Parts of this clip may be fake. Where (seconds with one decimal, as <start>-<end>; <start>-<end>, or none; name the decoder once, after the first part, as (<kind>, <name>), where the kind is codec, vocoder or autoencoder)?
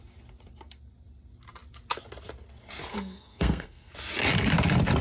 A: 2.9-3.9 (codec, SNAC)